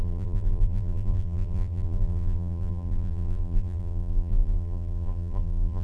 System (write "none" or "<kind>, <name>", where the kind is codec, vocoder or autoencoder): vocoder, BigVGAN v2